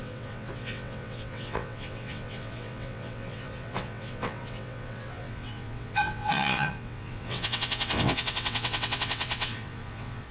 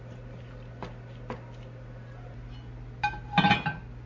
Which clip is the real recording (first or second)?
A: second